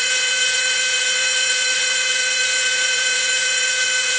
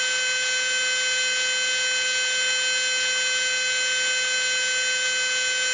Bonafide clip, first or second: second